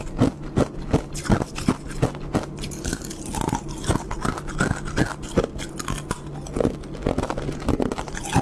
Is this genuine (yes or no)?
yes